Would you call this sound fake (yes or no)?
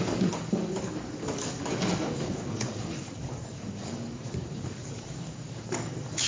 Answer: yes